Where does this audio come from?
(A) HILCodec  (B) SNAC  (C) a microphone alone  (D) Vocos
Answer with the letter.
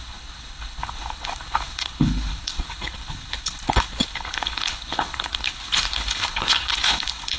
A